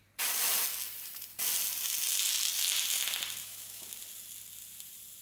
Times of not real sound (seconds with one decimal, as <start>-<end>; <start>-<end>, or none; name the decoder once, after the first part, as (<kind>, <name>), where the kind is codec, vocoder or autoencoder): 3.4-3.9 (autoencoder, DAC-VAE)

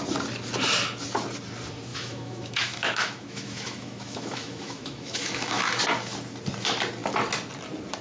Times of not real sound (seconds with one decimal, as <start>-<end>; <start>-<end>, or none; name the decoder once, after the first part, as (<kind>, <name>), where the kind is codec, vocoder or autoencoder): 1.9-5.8 (autoencoder, DAC-VAE)

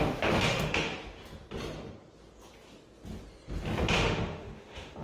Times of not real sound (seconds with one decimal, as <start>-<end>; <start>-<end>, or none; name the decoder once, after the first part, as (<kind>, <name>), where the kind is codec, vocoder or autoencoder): 0.0-0.9 (autoencoder, DAC-VAE); 3.9-5.0

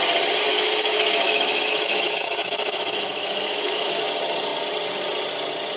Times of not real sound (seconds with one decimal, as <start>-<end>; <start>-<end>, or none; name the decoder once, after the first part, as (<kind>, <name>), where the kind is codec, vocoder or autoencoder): 0.5-4.0 (autoencoder, DAC-VAE)

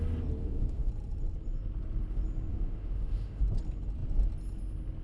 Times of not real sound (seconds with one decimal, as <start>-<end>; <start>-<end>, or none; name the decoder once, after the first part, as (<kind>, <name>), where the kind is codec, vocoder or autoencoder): 0.4-0.9 (autoencoder, DAC-VAE); 2.5-3.4

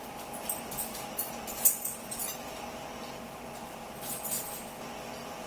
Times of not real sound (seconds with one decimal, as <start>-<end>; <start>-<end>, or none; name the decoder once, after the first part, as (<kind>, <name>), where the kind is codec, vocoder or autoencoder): none